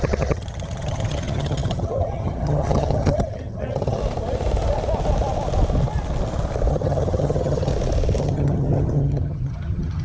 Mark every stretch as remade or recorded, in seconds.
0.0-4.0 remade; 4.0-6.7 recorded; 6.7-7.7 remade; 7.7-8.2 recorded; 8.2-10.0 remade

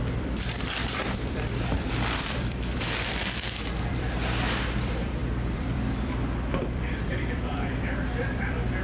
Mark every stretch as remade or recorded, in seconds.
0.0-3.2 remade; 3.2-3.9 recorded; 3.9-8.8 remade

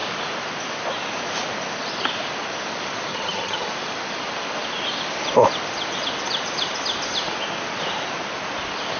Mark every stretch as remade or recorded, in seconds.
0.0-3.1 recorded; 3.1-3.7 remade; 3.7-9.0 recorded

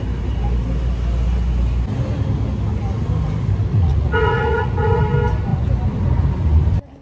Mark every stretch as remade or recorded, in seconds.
0.0-3.7 recorded; 3.7-5.0 remade; 5.0-7.0 recorded

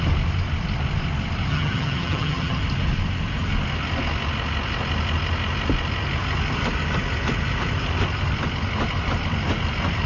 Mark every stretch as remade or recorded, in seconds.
0.0-1.5 recorded; 1.5-2.6 remade; 2.6-10.1 recorded

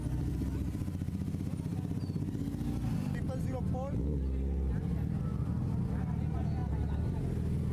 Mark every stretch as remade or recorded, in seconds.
0.0-6.6 recorded; 6.6-7.2 remade; 7.2-7.7 recorded

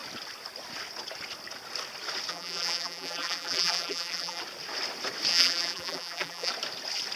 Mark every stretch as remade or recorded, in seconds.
0.0-2.3 recorded; 2.3-4.4 remade; 4.4-5.3 recorded; 5.3-6.5 remade; 6.5-7.2 recorded